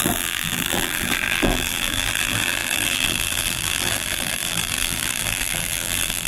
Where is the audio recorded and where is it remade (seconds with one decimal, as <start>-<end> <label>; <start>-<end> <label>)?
0.0-6.3 remade